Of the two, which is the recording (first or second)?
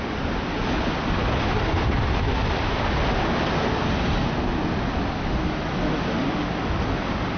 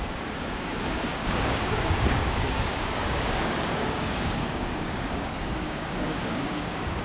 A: first